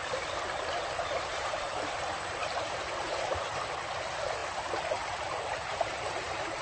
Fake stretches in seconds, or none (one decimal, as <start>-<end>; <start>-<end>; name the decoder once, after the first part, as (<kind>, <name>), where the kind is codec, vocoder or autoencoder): 1.3-3.5 (vocoder, BigVGAN v2); 5.7-6.6